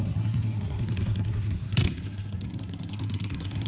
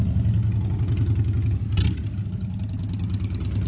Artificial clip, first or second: first